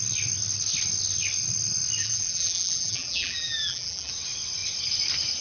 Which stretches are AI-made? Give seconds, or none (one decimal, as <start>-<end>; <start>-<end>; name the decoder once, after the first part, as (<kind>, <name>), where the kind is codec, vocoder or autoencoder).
2.0-4.1 (vocoder, BigVGAN v2)